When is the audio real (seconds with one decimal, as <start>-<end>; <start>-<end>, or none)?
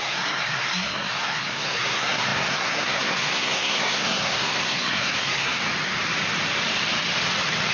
5.6-7.7